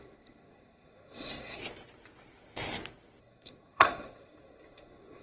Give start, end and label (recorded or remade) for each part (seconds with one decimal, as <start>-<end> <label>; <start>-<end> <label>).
0.0-1.6 remade; 1.6-3.2 recorded; 3.2-5.2 remade